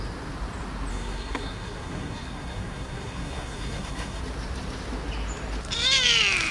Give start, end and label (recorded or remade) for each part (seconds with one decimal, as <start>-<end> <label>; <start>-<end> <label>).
0.0-0.9 recorded; 0.9-4.2 remade; 4.2-6.5 recorded